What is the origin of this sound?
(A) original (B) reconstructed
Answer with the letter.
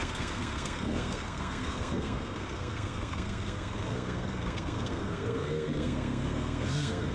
B